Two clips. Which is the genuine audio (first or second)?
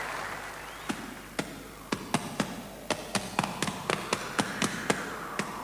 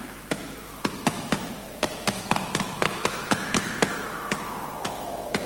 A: first